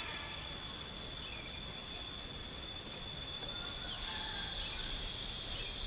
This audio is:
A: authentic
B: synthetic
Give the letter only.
A